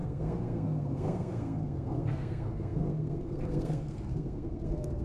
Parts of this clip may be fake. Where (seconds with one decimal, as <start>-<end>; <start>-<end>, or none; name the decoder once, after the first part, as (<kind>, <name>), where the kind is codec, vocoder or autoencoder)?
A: 0.0-5.0 (codec, SNAC)

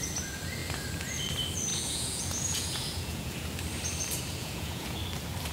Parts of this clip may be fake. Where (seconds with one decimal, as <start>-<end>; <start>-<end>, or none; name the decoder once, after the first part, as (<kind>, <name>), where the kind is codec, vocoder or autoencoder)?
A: 1.7-3.5 (vocoder, Vocos); 4.4-5.0

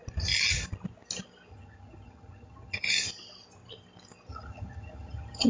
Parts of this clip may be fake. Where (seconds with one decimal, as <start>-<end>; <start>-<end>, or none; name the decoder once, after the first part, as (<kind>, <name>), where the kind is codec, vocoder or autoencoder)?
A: 1.5-2.8 (vocoder, HiFi-GAN); 4.3-5.5

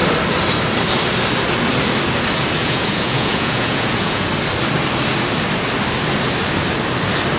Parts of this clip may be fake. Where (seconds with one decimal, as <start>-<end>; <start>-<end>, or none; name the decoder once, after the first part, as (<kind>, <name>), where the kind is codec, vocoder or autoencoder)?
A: 2.6-4.3 (vocoder, Vocos)

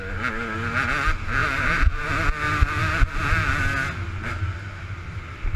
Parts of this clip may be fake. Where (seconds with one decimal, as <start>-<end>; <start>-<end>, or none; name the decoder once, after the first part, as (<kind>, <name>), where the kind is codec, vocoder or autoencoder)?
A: 1.4-2.0 (vocoder, BigVGAN v2)

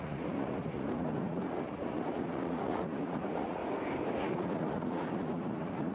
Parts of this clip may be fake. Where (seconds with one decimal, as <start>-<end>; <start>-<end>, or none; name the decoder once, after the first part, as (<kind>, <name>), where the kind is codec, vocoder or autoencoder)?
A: 0.0-3.6 (vocoder, Vocos); 4.2-5.9

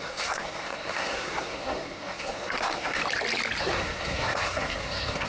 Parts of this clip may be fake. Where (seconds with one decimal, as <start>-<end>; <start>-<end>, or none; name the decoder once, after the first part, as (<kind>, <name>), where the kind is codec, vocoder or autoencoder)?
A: 0.0-3.0 (codec, SNAC); 3.6-5.3

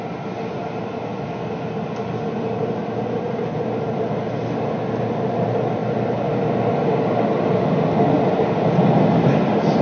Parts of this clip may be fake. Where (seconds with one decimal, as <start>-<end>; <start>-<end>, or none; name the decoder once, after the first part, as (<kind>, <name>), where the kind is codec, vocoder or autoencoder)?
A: 1.1-1.7 (autoencoder, DAC-VAE)